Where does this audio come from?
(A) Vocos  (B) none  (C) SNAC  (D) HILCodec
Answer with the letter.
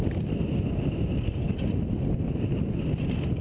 B